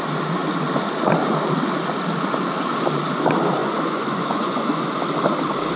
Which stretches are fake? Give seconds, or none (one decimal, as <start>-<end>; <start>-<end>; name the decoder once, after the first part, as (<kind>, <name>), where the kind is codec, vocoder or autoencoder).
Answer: 3.6-4.8 (vocoder, Vocos)